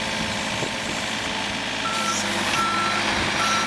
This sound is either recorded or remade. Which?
recorded